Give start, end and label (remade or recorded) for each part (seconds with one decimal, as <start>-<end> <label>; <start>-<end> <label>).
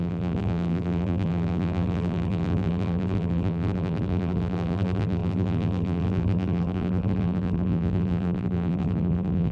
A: 0.0-9.5 remade